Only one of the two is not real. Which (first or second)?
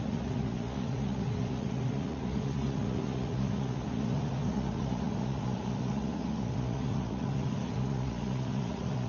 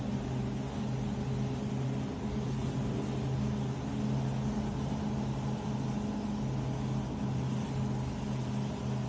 first